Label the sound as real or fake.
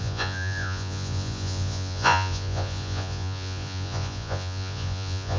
fake